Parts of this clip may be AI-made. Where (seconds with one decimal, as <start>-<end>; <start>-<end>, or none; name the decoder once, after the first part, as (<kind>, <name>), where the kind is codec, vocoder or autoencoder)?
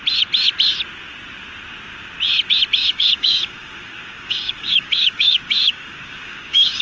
2.8-6.8 (codec, DAC)